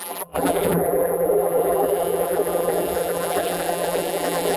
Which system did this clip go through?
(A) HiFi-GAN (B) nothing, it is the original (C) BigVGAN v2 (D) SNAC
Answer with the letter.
C